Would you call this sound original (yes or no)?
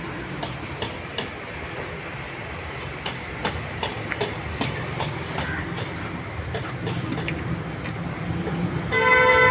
yes